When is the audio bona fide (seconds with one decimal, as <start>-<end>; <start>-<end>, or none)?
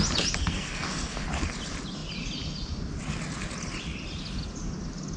0.0-0.4; 1.2-5.2